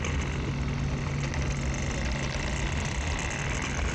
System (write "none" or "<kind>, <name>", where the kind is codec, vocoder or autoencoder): none